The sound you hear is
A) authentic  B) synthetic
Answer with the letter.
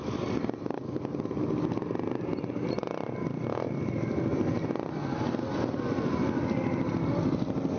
A